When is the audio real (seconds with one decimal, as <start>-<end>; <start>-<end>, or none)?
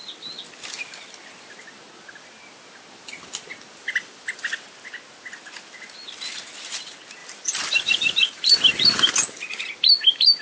0.0-3.8; 4.5-7.2; 8.6-10.4